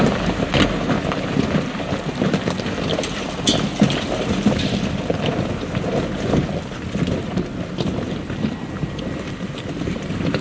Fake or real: real